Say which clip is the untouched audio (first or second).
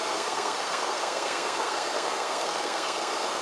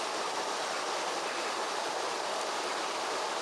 second